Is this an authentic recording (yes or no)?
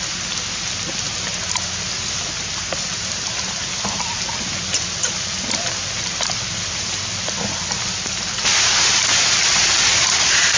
yes